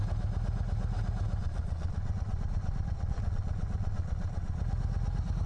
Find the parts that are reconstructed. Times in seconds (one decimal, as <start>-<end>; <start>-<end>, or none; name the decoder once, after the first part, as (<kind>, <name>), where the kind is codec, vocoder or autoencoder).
1.4-4.6 (vocoder, Vocos)